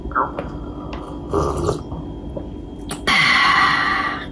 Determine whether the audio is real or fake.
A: real